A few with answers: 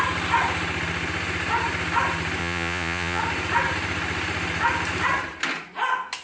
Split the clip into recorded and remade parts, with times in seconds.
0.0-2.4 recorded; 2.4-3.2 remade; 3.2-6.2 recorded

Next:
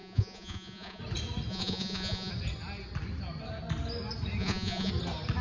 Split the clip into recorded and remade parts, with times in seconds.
0.0-1.0 remade; 1.0-1.5 recorded; 1.5-2.3 remade; 2.3-4.4 recorded; 4.4-4.9 remade; 4.9-5.4 recorded

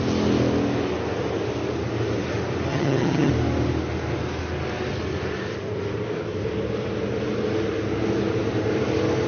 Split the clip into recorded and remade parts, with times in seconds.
0.0-2.7 recorded; 2.7-3.3 remade; 3.3-9.3 recorded

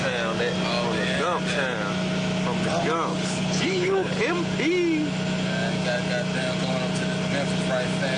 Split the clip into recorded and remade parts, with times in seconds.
0.0-3.1 recorded; 3.1-4.2 remade; 4.2-8.2 recorded

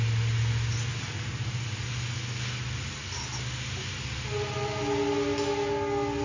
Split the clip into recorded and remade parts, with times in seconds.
0.0-6.2 recorded

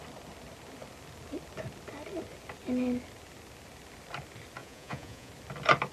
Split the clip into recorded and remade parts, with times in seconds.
0.0-4.6 recorded; 4.6-5.3 remade; 5.3-5.9 recorded